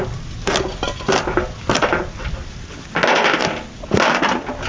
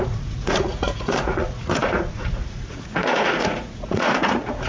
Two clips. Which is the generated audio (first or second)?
second